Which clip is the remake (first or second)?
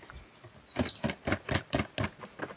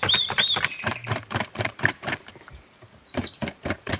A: second